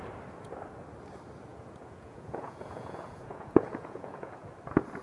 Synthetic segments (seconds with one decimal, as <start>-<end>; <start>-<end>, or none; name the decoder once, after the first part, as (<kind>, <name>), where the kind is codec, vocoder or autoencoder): 1.5-4.5 (vocoder, Vocos)